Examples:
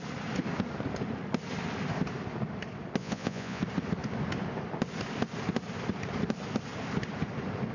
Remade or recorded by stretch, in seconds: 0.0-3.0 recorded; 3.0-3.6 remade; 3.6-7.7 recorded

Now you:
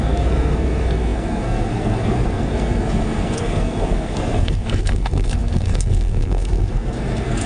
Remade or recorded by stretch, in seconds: 0.0-7.5 remade

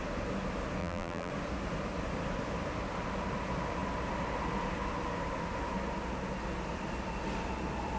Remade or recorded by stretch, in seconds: 0.0-0.8 recorded; 0.8-1.3 remade; 1.3-8.0 recorded

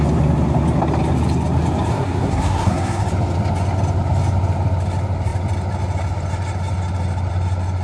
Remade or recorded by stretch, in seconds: 0.0-1.9 recorded; 1.9-3.0 remade; 3.0-7.8 recorded

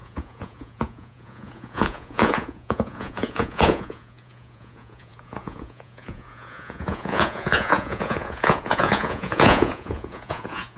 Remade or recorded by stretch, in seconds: 0.0-10.8 remade

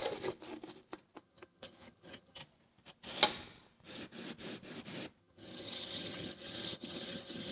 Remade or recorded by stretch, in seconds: 0.0-1.2 recorded; 1.2-2.4 remade; 2.4-5.2 recorded; 5.2-7.5 remade

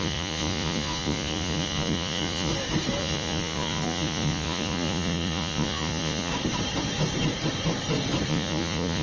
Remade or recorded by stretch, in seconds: 0.0-2.5 remade; 2.5-3.0 recorded; 3.0-6.3 remade; 6.3-8.3 recorded; 8.3-9.0 remade